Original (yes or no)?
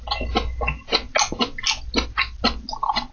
yes